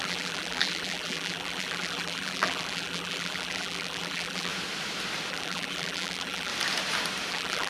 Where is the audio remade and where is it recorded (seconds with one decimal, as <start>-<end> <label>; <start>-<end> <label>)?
0.0-4.5 remade; 4.5-5.3 recorded; 5.3-6.5 remade; 6.5-7.3 recorded; 7.3-7.7 remade